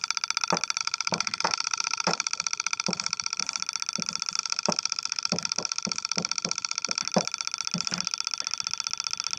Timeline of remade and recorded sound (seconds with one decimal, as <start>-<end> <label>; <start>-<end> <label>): 0.0-0.8 recorded; 0.8-3.4 remade; 3.4-4.4 recorded; 4.4-7.0 remade; 7.0-9.4 recorded